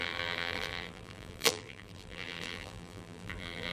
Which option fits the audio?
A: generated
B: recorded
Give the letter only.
A